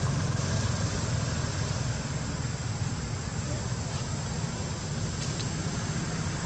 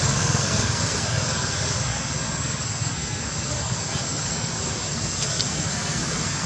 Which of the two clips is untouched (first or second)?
first